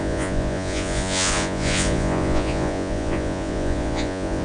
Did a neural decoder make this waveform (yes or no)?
yes